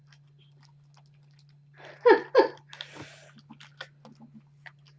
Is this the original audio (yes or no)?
yes